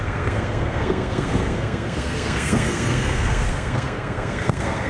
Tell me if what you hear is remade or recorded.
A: remade